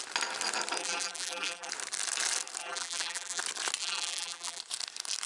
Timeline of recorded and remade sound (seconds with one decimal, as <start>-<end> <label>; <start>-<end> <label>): 0.0-0.8 recorded; 0.8-1.7 remade; 1.7-2.6 recorded; 2.6-3.4 remade; 3.4-3.8 recorded; 3.8-4.6 remade; 4.6-5.3 recorded